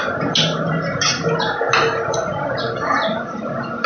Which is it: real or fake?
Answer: real